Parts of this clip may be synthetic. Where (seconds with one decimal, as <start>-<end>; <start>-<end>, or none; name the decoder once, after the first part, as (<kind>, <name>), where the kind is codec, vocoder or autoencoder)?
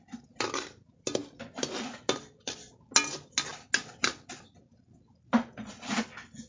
none